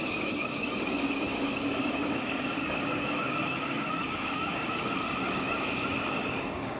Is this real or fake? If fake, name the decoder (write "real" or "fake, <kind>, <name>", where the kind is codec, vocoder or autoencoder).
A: fake, codec, DAC